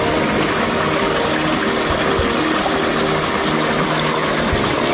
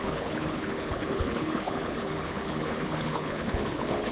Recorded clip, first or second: first